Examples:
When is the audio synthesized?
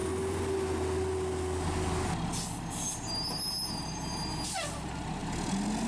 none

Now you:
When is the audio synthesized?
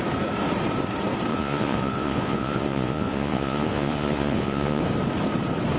1.3-4.8 (vocoder, Vocos)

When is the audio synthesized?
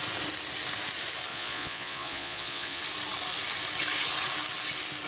1.3-2.8 (vocoder, Vocos)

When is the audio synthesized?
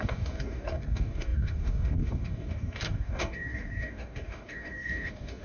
0.0-5.4 (codec, DAC)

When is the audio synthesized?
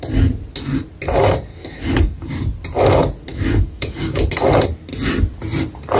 1.5-2.3 (codec, DAC); 3.3-4.2